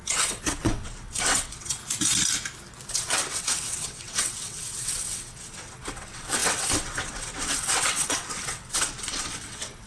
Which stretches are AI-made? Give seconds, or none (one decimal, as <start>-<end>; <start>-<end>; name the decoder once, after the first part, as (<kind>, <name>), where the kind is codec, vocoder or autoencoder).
0.0-1.8 (vocoder, WaveNeXt); 2.9-9.9